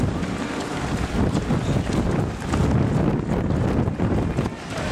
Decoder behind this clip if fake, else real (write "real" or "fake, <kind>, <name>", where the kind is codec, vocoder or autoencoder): real